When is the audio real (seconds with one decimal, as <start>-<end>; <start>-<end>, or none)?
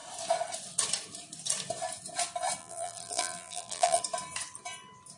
0.0-2.6; 4.0-5.2